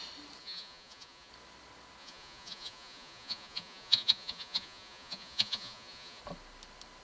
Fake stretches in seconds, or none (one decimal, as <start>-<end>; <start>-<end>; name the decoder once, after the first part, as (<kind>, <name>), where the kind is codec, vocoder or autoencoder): 0.4-1.3 (vocoder, Vocos); 2.0-6.2